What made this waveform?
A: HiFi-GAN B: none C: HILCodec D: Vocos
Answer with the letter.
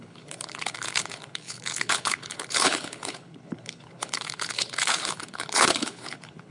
C